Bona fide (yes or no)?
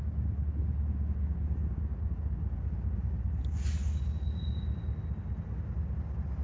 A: yes